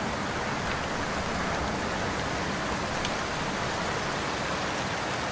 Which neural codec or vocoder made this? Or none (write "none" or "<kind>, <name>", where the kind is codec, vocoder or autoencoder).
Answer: none